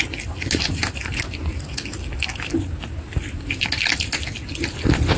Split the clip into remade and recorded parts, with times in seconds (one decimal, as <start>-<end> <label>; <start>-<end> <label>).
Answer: 0.0-5.2 recorded